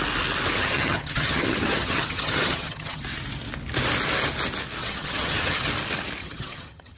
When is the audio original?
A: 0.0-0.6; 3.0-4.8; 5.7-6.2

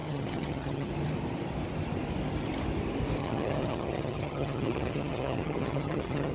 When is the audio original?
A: 0.9-3.2

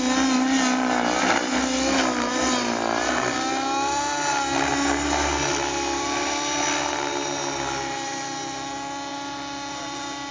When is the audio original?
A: 0.0-10.3